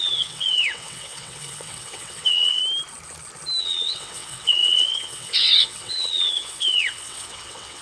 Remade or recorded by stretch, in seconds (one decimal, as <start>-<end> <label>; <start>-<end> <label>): 0.0-2.6 remade; 2.6-3.6 recorded; 3.6-7.8 remade